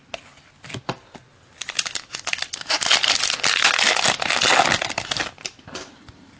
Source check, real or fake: real